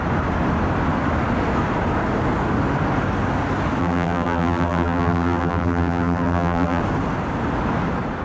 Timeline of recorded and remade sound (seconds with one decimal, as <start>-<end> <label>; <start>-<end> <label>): 0.0-3.8 recorded; 3.8-6.8 remade; 6.8-8.2 recorded